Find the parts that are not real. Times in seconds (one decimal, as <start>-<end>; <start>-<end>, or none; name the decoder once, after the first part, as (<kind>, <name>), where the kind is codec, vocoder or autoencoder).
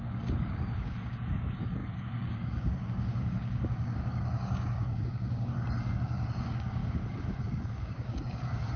0.0-8.8 (codec, DAC)